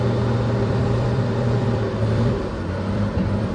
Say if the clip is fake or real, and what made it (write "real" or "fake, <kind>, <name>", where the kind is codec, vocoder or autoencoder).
fake, vocoder, BigVGAN v2